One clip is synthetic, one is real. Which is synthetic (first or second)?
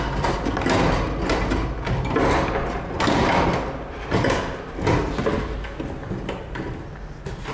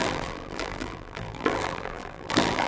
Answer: second